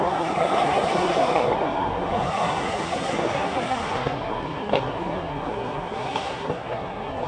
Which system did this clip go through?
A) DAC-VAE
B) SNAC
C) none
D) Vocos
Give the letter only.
B